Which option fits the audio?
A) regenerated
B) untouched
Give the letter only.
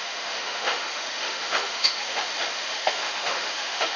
A